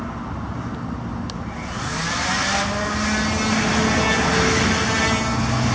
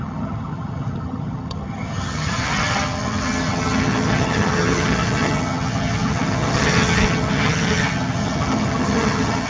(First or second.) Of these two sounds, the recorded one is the first